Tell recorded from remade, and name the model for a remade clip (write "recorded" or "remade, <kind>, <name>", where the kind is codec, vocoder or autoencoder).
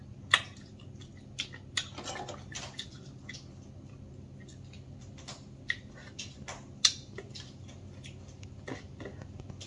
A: recorded